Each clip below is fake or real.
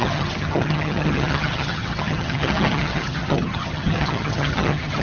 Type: fake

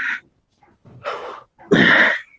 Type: real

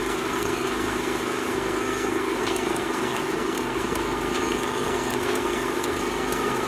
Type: fake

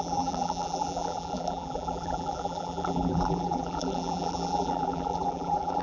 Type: fake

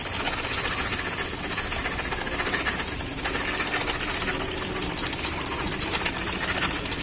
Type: real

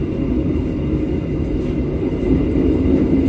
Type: real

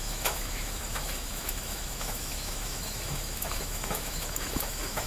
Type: fake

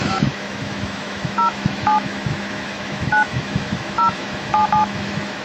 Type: fake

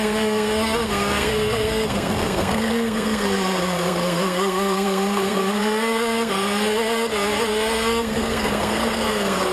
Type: fake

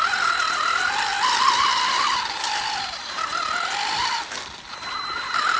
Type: fake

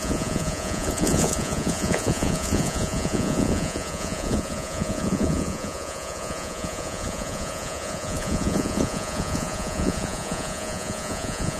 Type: fake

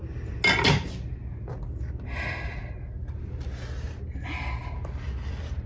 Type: real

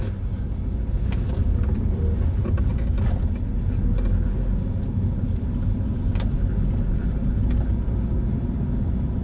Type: real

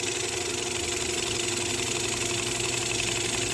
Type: real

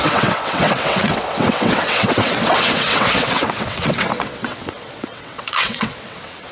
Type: fake